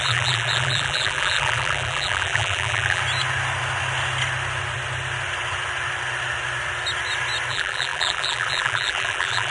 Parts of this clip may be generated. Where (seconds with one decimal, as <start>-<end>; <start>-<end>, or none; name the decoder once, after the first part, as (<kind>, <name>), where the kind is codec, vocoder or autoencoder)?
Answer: 0.0-3.0 (vocoder, BigVGAN v2); 7.5-9.5